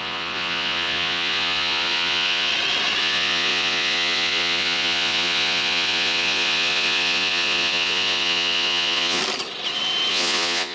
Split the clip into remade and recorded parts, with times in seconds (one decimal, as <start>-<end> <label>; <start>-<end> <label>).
0.0-2.5 remade; 2.5-3.0 recorded; 3.0-9.2 remade; 9.2-10.1 recorded; 10.1-10.7 remade